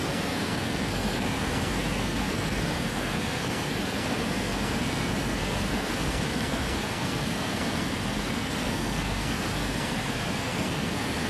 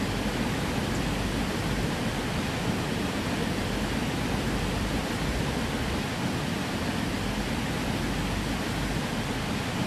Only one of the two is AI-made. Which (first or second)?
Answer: first